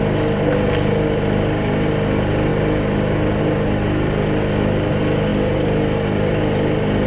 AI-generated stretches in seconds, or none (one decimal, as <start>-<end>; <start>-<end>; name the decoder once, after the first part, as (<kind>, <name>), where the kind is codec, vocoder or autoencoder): 5.3-6.4 (vocoder, BigVGAN v2)